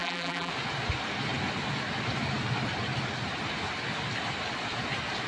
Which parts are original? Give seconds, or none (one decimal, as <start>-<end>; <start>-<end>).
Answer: 0.5-5.3